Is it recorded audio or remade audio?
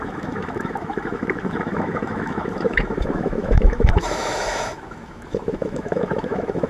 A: remade